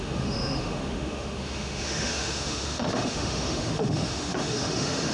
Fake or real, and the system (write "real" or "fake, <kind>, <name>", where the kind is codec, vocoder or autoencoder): fake, autoencoder, DAC-VAE